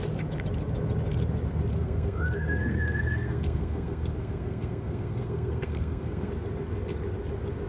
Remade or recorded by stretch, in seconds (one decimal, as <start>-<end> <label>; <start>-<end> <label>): 0.0-1.7 recorded; 1.7-6.3 remade; 6.3-7.7 recorded